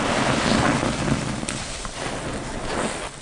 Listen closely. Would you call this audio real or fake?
real